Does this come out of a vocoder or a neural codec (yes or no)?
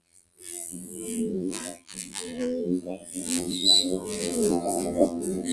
yes